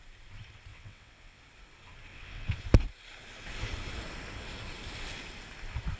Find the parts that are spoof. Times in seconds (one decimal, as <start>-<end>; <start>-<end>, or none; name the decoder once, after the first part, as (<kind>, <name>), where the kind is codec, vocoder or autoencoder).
0.7-1.4 (vocoder, WaveNeXt); 2.1-2.6